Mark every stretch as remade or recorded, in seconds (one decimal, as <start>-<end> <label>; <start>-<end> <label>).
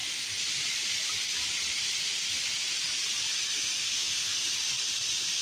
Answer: 0.0-3.8 recorded; 3.8-4.4 remade; 4.4-5.4 recorded